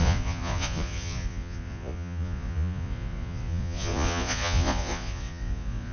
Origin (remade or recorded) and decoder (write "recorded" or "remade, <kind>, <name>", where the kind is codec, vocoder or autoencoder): remade, vocoder, Vocos